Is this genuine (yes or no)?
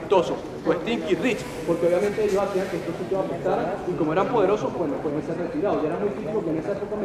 yes